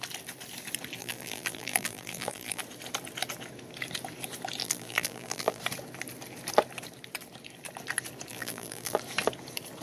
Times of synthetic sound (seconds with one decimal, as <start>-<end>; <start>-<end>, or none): 1.0-2.6; 4.6-5.6; 8.3-9.0